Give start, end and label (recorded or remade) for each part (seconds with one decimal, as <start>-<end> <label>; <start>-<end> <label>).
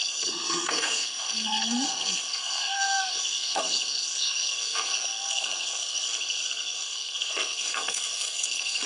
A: 0.0-8.9 remade